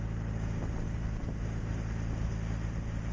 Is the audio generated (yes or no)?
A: no